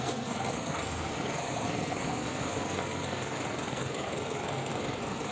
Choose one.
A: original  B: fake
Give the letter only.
B